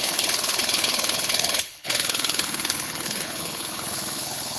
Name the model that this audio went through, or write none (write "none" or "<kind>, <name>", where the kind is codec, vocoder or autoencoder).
codec, HILCodec